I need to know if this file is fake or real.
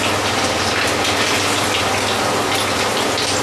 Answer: real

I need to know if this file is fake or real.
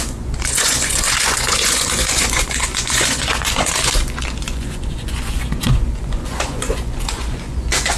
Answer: fake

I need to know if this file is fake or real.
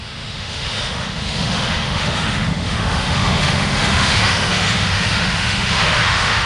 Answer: fake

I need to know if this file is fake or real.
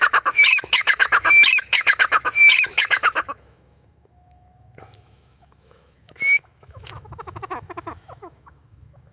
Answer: fake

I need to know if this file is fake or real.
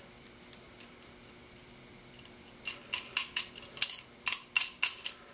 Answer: real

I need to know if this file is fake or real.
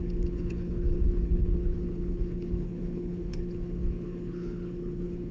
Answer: fake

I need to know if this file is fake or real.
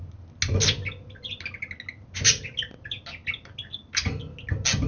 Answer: real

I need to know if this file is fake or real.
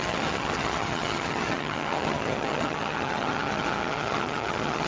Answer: fake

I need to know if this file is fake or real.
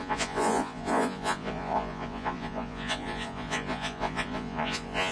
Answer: fake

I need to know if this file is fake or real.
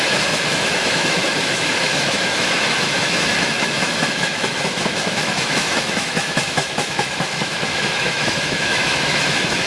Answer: fake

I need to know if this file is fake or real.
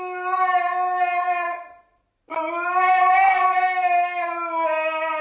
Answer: real